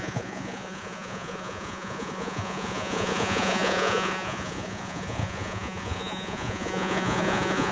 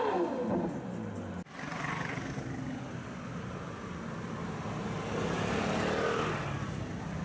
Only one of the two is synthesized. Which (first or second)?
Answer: first